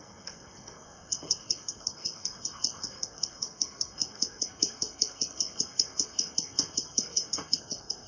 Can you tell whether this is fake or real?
fake